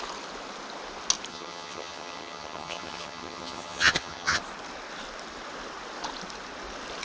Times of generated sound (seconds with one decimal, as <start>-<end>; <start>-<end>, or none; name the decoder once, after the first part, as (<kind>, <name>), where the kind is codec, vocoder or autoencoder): 1.3-4.4 (vocoder, HiFi-GAN)